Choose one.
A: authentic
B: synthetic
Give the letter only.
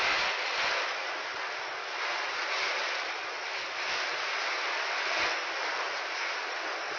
A